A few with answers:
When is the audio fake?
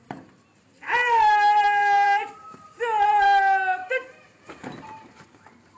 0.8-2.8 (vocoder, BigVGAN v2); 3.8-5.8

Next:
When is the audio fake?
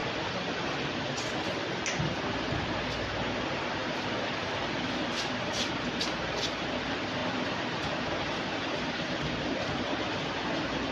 0.0-1.3 (vocoder, BigVGAN v2); 3.8-4.4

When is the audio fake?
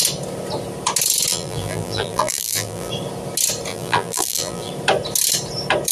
1.3-2.9 (vocoder, BigVGAN v2); 3.7-4.7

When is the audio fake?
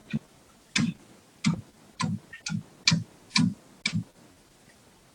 none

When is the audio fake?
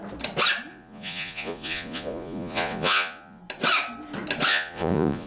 0.7-3.4 (vocoder, Vocos); 4.5-5.3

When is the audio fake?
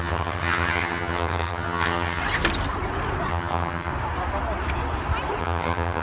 0.0-2.2 (vocoder, HiFi-GAN); 3.3-3.9; 5.4-6.0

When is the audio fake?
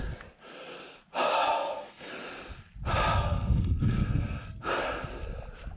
1.3-2.1 (codec, SNAC); 2.9-4.8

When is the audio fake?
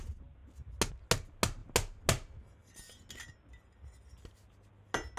none